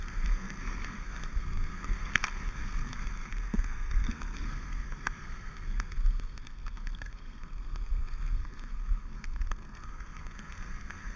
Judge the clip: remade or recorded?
remade